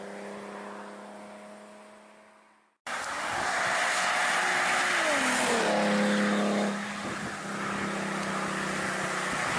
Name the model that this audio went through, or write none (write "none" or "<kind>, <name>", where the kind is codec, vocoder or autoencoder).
none